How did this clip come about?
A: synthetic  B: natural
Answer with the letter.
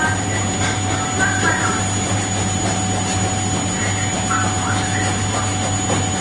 B